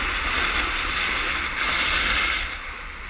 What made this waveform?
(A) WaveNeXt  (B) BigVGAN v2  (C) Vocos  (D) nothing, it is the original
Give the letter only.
D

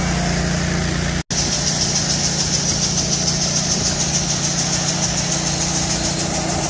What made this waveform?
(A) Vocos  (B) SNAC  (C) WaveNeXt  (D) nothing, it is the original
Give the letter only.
D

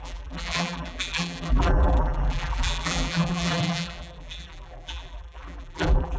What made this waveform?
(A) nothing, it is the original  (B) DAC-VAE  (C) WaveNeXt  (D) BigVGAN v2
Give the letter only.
D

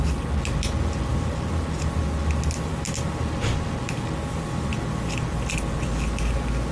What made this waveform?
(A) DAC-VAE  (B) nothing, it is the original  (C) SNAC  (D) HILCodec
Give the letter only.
B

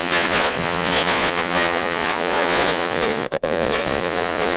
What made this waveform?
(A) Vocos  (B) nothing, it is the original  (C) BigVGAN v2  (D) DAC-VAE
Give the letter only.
A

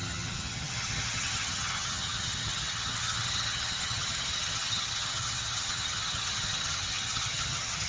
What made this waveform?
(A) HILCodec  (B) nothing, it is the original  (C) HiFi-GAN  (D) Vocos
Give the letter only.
C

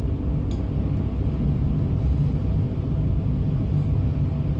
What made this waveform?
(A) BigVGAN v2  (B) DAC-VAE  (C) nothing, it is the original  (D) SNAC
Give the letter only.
C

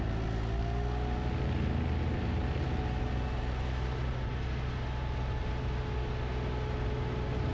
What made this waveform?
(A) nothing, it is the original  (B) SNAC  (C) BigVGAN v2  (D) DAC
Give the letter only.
A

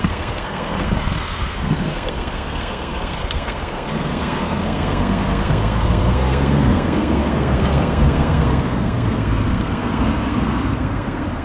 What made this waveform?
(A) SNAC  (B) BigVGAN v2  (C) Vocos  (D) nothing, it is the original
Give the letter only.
A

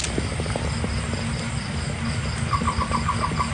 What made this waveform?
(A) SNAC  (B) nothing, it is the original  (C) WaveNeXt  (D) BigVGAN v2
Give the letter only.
B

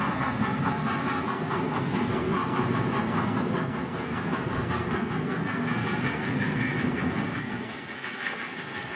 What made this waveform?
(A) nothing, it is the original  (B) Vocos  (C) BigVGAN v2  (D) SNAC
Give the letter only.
D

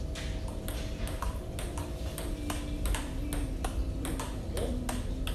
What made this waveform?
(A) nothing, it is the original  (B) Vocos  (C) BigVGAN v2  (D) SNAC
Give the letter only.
A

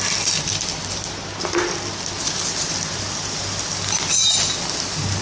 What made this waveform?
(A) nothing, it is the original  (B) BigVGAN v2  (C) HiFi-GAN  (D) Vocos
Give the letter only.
A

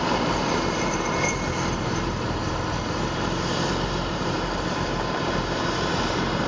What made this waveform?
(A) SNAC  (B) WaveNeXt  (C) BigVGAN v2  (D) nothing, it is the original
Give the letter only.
C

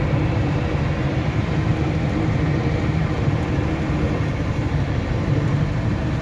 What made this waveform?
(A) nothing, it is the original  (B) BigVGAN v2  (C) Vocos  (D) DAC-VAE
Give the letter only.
B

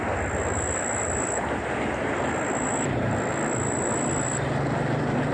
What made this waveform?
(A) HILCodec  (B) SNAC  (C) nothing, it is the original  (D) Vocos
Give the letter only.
C